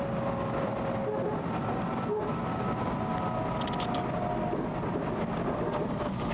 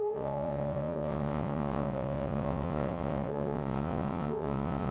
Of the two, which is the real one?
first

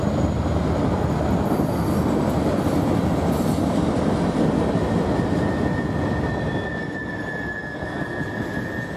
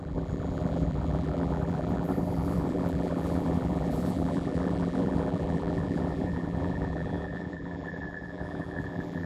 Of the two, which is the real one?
first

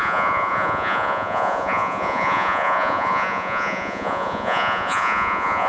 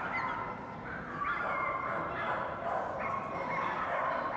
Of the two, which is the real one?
second